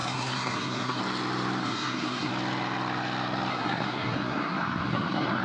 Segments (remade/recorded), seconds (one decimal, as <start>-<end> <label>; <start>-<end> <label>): 0.0-1.0 remade; 1.0-1.6 recorded; 1.6-2.3 remade; 2.3-3.5 recorded; 3.5-5.4 remade